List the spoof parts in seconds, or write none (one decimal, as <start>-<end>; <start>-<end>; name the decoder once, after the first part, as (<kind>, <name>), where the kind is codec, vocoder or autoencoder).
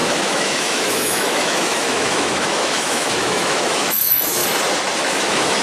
0.0-4.4 (autoencoder, DAC-VAE); 5.0-5.6